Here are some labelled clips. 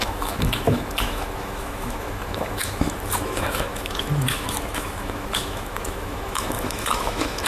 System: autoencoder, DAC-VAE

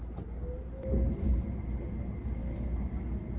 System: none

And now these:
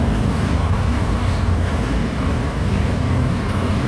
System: codec, DAC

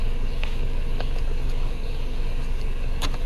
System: codec, DAC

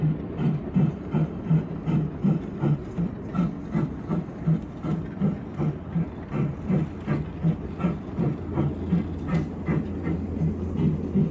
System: none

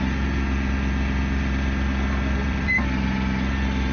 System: vocoder, BigVGAN v2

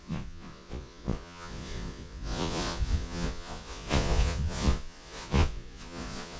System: vocoder, Vocos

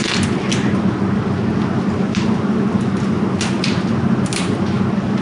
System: none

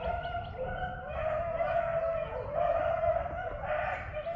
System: none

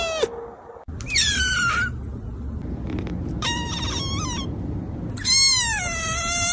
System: none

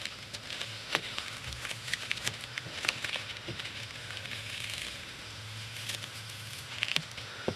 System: autoencoder, DAC-VAE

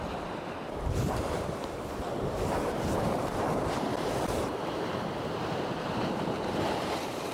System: vocoder, BigVGAN v2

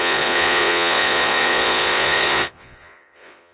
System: vocoder, Vocos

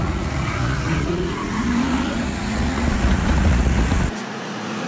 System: vocoder, Vocos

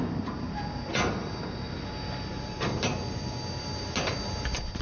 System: none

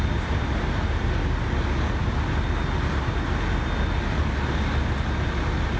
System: none